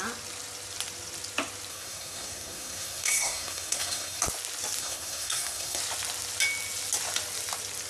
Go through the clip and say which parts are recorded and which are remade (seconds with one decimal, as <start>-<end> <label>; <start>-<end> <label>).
0.0-1.7 recorded; 1.7-4.2 remade; 4.2-4.8 recorded; 4.8-5.8 remade; 5.8-7.9 recorded